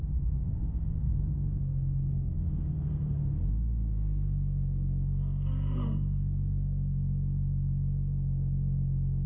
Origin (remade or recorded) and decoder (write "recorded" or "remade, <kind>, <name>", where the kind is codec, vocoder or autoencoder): remade, codec, SNAC